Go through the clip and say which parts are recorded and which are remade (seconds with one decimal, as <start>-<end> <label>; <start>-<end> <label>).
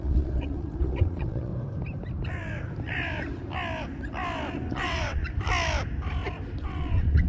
0.0-1.5 remade; 1.5-4.7 recorded; 4.7-5.2 remade; 5.2-6.6 recorded; 6.6-7.3 remade